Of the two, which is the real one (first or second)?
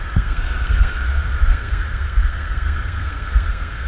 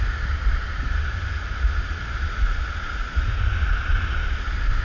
second